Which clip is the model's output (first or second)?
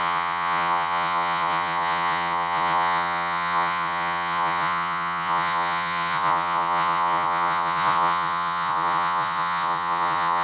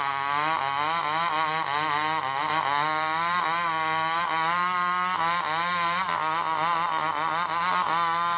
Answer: first